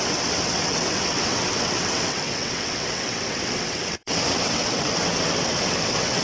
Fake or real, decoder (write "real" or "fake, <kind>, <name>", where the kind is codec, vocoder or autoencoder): fake, vocoder, WaveNeXt